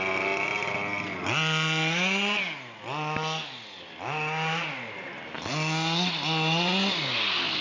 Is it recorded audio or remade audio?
recorded